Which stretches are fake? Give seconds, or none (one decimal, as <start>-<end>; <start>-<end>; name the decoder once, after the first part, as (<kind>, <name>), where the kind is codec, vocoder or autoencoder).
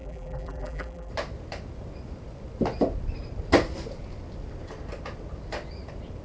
0.0-1.1 (vocoder, BigVGAN v2)